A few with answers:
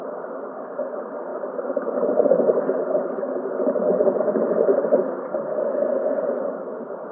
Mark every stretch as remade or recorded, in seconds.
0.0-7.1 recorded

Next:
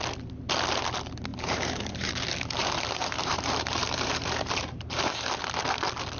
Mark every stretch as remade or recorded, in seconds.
0.0-1.3 recorded; 1.3-2.1 remade; 2.1-2.6 recorded; 2.6-5.3 remade; 5.3-6.2 recorded

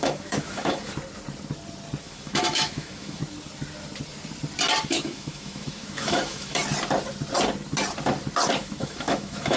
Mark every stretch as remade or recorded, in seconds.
0.0-0.9 remade; 0.9-2.0 recorded; 2.0-3.2 remade; 3.2-4.9 recorded; 4.9-6.6 remade; 6.6-8.6 recorded; 8.6-9.6 remade

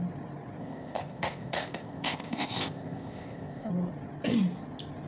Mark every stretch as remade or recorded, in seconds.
0.0-0.6 recorded; 0.6-3.7 remade; 3.7-5.1 recorded

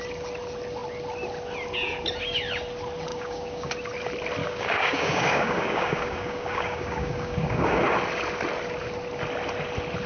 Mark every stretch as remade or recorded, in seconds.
0.0-3.1 recorded; 3.1-3.7 remade; 3.7-4.4 recorded; 4.4-7.8 remade; 7.8-10.1 recorded

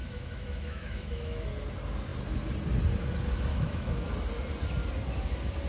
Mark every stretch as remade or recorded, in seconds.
0.0-1.5 remade; 1.5-3.5 recorded; 3.5-4.1 remade; 4.1-5.7 recorded